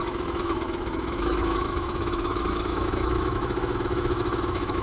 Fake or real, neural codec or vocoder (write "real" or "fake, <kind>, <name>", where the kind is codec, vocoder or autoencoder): fake, autoencoder, DAC-VAE